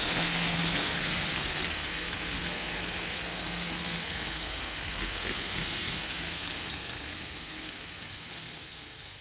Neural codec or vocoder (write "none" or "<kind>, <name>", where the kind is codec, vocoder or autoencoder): codec, SNAC